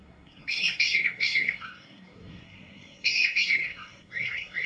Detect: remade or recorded remade